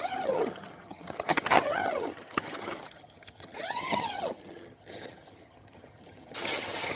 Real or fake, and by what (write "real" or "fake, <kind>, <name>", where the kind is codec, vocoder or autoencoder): fake, vocoder, HiFi-GAN